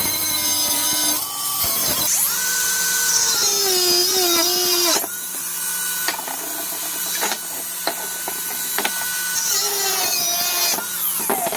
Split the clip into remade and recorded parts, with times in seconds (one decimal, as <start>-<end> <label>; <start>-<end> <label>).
0.0-1.8 recorded; 1.8-3.1 remade; 3.1-4.0 recorded; 4.0-5.5 remade; 5.5-11.6 recorded